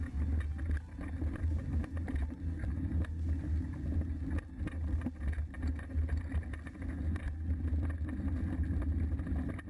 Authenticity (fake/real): real